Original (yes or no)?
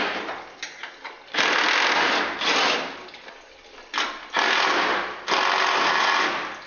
yes